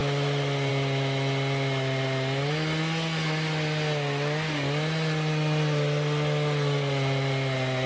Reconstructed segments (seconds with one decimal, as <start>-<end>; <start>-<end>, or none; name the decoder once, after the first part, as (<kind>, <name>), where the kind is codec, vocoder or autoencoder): none